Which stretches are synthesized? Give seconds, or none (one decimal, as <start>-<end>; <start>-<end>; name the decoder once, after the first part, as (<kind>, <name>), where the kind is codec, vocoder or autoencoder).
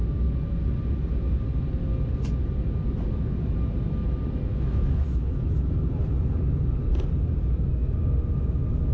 4.5-5.7 (autoencoder, DAC-VAE)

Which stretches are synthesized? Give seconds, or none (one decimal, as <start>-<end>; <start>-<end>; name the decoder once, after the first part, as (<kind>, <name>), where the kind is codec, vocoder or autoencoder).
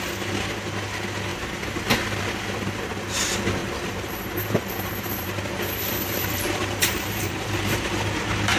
1.3-2.2 (vocoder, BigVGAN v2); 3.6-7.5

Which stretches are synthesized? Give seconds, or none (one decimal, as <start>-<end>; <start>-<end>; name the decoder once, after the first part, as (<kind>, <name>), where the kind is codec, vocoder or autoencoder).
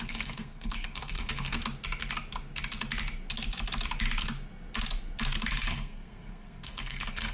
0.0-1.6 (codec, SNAC); 5.5-7.3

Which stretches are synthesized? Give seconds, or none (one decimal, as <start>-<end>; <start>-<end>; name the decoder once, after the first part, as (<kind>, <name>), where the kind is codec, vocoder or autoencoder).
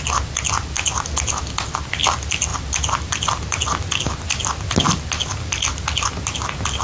none